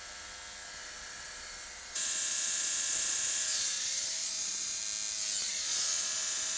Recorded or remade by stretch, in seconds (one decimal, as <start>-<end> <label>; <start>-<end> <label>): 0.0-0.8 recorded; 0.8-4.8 remade; 4.8-5.4 recorded; 5.4-6.6 remade